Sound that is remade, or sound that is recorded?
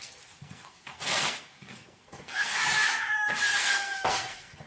remade